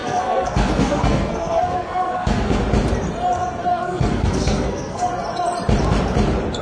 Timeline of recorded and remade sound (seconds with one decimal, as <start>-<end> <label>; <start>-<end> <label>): 0.0-2.6 remade; 2.6-3.7 recorded; 3.7-5.1 remade; 5.1-6.6 recorded

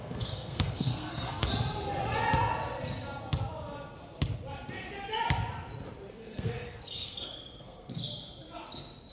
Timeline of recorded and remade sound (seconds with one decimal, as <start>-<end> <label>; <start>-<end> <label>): 0.0-1.5 remade; 1.5-6.1 recorded; 6.1-7.9 remade; 7.9-9.1 recorded

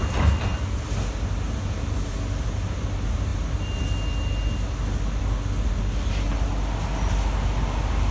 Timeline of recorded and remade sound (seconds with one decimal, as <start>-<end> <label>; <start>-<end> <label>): 0.0-8.1 recorded